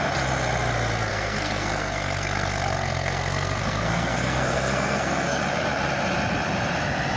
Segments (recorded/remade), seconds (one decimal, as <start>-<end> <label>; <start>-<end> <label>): 0.0-1.1 recorded; 1.1-5.4 remade; 5.4-7.2 recorded